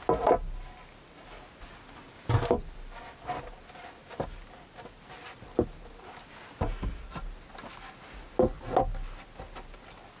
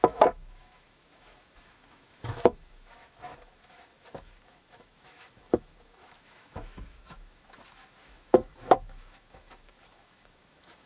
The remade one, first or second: second